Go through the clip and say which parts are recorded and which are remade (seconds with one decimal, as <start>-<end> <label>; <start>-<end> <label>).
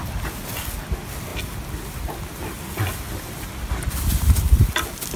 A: 0.0-5.2 recorded